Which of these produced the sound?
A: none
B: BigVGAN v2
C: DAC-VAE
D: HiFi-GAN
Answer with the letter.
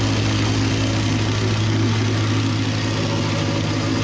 A